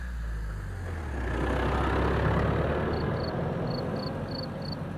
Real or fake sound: real